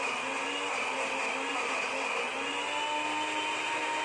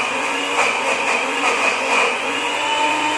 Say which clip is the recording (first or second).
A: first